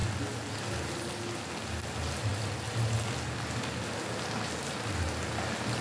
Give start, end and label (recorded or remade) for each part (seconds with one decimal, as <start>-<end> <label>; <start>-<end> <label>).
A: 0.0-5.8 recorded